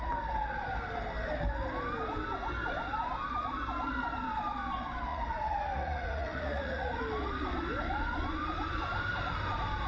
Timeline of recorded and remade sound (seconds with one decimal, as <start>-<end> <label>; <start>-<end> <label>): 0.0-5.1 recorded; 5.1-7.0 remade; 7.0-9.9 recorded